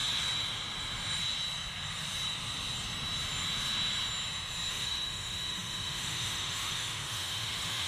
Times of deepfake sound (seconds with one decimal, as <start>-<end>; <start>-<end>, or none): 4.7-7.9